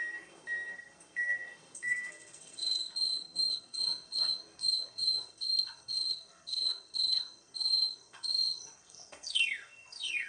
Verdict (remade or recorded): remade